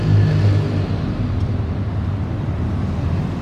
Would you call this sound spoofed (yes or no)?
no